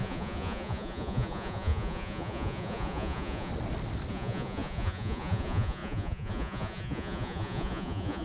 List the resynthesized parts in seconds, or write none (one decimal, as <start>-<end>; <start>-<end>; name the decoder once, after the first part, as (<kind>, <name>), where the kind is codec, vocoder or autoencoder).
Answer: 0.0-3.5 (vocoder, Vocos); 4.1-8.2